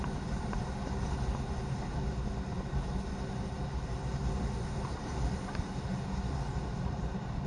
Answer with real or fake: real